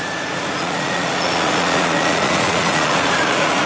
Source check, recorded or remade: remade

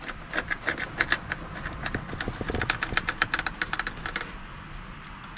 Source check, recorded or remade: recorded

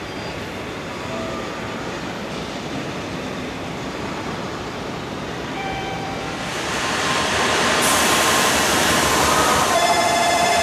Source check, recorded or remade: remade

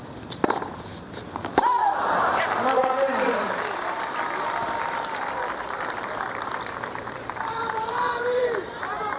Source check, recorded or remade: remade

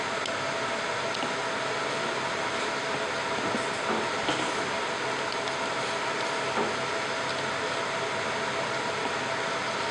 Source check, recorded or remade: recorded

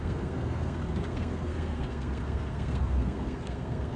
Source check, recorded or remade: remade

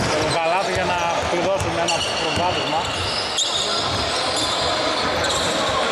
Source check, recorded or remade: recorded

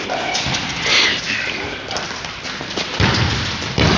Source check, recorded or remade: recorded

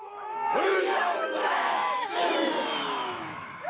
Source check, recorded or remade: remade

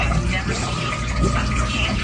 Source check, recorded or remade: recorded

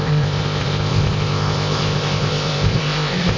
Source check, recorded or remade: remade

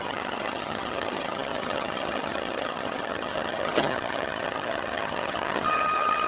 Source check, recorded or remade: remade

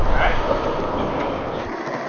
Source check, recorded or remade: recorded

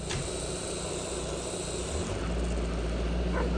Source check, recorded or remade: recorded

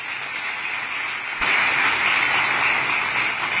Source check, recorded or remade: recorded